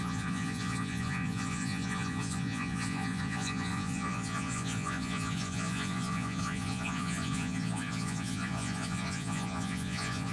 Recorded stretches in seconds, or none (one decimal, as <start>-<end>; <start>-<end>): none